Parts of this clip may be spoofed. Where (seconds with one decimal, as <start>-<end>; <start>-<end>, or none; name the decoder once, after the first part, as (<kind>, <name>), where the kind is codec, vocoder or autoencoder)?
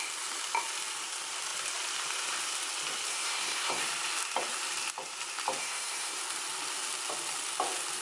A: 3.1-3.8 (codec, SNAC); 5.6-6.2